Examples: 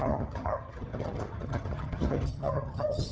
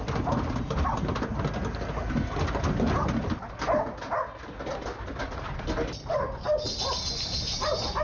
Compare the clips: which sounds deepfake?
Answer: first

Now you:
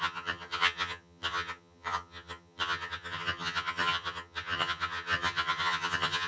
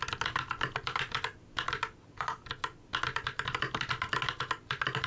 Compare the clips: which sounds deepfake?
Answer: first